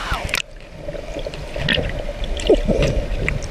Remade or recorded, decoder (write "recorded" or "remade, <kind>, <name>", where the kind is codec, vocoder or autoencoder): recorded